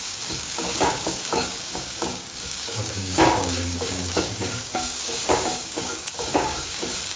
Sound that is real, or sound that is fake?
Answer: fake